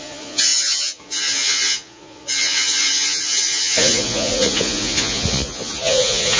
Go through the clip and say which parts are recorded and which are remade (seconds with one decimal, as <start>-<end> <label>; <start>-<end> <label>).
0.0-6.4 remade